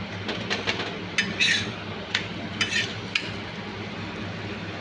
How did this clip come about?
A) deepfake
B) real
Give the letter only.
B